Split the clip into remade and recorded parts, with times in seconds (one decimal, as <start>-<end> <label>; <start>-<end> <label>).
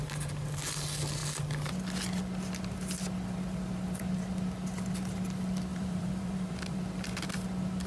0.0-5.7 recorded; 5.7-6.8 remade; 6.8-7.9 recorded